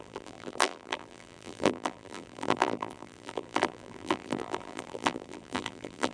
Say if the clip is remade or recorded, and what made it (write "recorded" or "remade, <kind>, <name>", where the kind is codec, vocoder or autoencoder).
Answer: remade, vocoder, BigVGAN v2